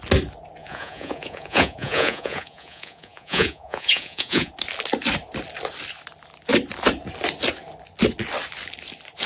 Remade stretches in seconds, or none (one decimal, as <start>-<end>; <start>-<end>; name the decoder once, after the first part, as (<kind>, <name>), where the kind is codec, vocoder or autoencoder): 0.6-4.5 (vocoder, Vocos)